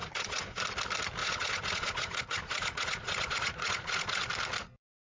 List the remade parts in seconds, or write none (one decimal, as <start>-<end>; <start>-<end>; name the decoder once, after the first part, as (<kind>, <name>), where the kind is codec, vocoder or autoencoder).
0.0-0.6 (vocoder, Vocos); 1.2-4.3